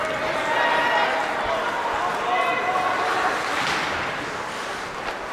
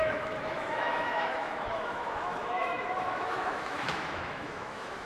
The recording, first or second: first